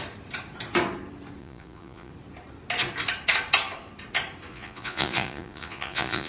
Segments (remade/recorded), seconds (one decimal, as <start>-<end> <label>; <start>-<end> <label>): 0.0-1.4 recorded; 1.4-2.1 remade; 2.1-4.5 recorded; 4.5-6.3 remade